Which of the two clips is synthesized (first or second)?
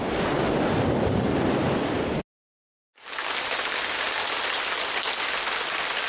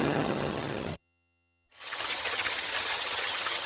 second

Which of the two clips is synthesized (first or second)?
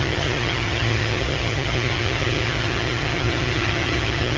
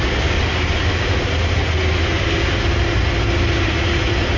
first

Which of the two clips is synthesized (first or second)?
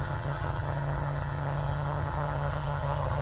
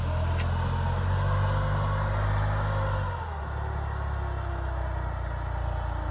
first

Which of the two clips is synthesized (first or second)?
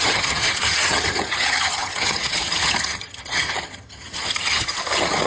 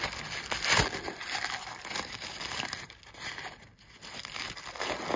first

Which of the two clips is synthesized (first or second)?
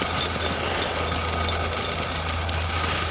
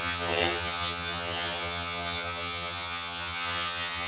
second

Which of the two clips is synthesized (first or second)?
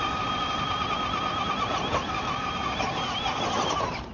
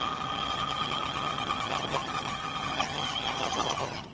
second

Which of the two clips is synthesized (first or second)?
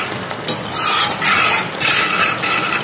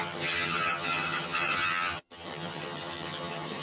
second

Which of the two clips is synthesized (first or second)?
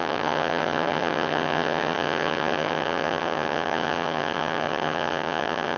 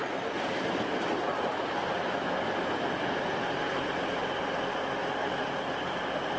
first